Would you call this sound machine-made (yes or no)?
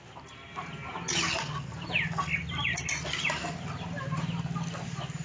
no